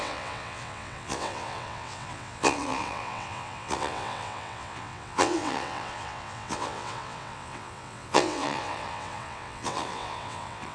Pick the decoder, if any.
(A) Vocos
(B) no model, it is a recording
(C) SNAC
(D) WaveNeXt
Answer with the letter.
D